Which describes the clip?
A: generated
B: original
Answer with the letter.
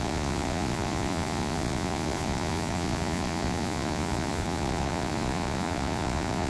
A